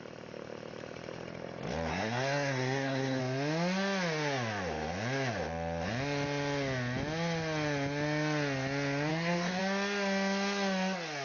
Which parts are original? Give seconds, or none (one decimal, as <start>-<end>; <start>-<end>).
0.0-1.9; 3.2-9.1; 9.6-11.2

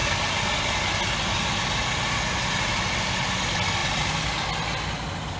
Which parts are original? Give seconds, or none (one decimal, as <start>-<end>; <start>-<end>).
0.0-5.4

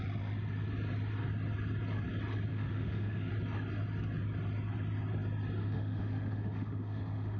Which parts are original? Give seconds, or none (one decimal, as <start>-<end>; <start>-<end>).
0.0-2.5; 3.3-5.6

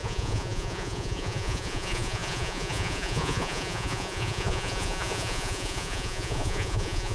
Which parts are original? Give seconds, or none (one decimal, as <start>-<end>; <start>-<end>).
none

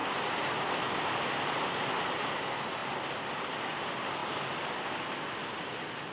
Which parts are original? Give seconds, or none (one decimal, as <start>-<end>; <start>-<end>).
0.0-6.1

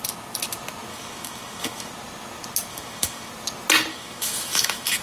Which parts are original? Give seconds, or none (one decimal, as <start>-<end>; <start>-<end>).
0.0-0.9; 1.9-2.7; 3.3-3.9

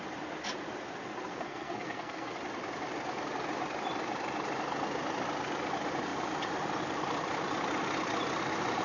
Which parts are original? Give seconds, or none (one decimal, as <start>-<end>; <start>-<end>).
0.0-1.3; 2.3-8.8